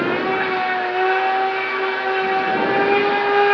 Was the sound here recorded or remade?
recorded